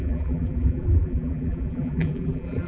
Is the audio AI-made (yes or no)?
yes